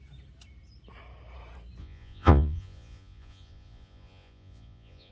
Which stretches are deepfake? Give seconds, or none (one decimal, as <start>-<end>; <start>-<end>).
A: 1.8-5.1